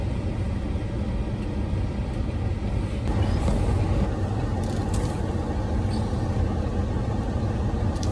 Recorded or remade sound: recorded